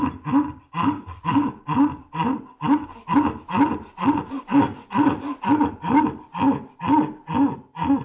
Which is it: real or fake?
real